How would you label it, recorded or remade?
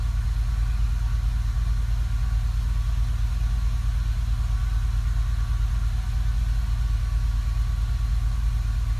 recorded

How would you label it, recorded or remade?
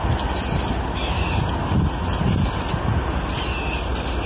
recorded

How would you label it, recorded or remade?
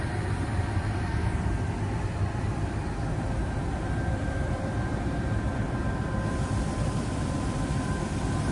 remade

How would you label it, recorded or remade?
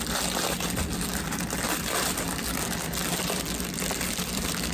recorded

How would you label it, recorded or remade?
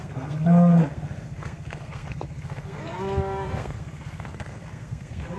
remade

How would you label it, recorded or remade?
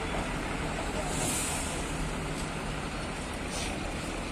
recorded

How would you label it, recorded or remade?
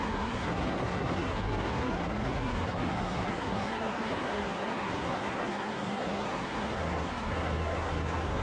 remade